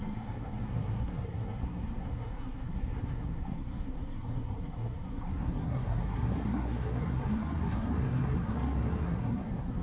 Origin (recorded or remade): remade